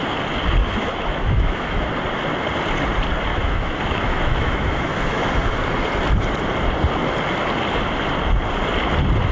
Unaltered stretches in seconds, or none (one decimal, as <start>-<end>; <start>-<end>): 0.0-0.6; 1.9-3.3; 5.3-9.3